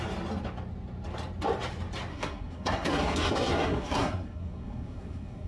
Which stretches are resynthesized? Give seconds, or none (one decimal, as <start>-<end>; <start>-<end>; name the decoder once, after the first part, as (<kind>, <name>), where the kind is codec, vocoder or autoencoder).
2.1-5.5 (codec, SNAC)